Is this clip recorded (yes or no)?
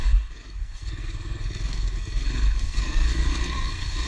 no